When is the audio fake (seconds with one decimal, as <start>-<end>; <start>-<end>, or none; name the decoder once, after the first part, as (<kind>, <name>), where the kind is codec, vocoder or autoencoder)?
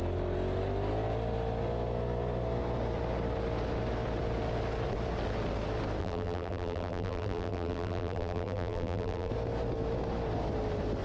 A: 6.0-9.3 (vocoder, BigVGAN v2)